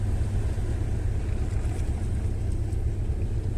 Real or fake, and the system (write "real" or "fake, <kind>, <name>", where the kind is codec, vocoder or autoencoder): real